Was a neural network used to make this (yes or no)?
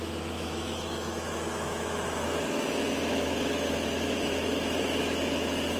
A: yes